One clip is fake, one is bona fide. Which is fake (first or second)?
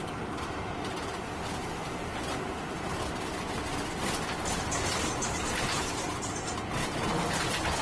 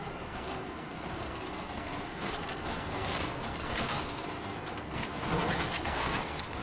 second